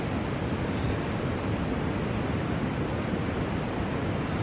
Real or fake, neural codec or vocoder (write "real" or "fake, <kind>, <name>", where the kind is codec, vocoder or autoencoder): real